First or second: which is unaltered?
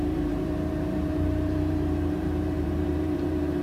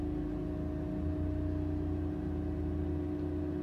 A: second